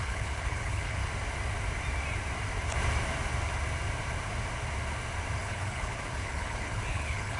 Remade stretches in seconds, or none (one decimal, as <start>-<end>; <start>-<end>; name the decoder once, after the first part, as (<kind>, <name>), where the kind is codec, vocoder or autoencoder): 0.0-1.0 (codec, HILCodec); 5.4-7.4